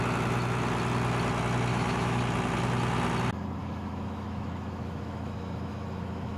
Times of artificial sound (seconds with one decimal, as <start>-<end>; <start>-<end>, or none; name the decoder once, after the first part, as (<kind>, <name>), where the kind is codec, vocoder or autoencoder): 1.7-2.2 (autoencoder, DAC-VAE); 3.6-6.4